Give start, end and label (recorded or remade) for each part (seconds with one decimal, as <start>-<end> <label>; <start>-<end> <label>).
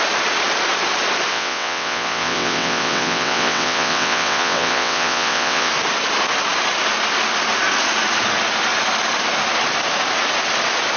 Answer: 0.0-1.3 recorded; 1.3-5.7 remade; 5.7-11.0 recorded